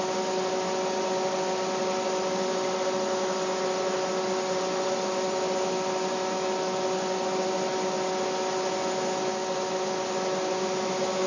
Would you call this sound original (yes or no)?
yes